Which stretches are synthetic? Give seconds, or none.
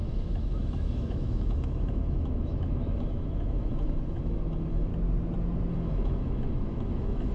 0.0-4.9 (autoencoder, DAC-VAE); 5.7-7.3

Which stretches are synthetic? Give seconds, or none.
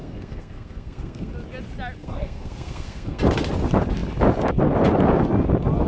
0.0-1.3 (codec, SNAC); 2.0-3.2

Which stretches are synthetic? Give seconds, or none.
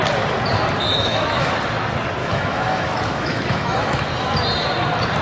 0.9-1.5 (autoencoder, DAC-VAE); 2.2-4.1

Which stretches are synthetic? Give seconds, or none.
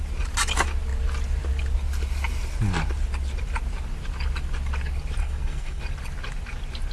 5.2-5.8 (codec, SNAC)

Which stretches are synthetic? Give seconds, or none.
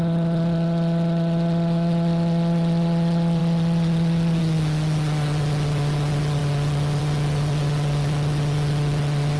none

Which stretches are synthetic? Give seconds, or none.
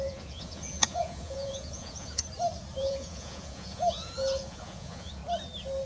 0.0-2.2 (vocoder, Vocos); 2.8-5.2